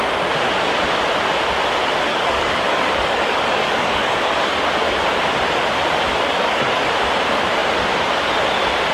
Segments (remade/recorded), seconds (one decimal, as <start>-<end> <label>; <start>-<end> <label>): 0.0-2.1 recorded; 2.1-4.6 remade; 4.6-6.1 recorded; 6.1-6.9 remade; 6.9-8.9 recorded